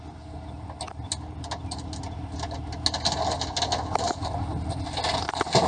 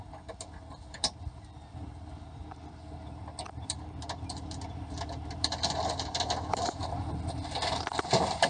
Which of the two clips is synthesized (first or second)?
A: second